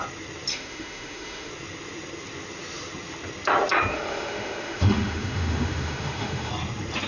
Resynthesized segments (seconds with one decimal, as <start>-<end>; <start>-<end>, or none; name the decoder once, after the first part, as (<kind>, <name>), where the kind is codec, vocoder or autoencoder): 0.5-1.5 (autoencoder, DAC-VAE); 3.9-6.5

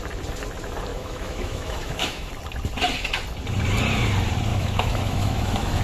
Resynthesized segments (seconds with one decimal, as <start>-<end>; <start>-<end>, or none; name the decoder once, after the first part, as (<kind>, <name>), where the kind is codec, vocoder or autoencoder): 0.9-2.3 (autoencoder, DAC-VAE); 4.5-5.8

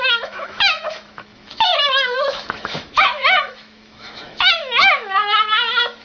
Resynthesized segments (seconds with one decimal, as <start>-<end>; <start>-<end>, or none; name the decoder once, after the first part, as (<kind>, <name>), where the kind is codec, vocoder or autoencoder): 0.0-6.0 (autoencoder, DAC-VAE)

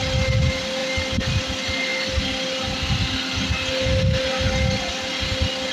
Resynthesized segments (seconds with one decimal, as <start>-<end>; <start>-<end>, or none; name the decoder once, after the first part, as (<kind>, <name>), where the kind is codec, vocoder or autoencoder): none

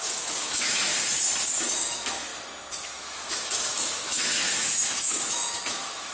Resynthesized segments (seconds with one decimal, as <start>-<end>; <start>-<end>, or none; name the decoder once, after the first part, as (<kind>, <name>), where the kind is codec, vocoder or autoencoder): 0.0-0.9 (autoencoder, DAC-VAE); 1.5-2.3; 2.8-6.1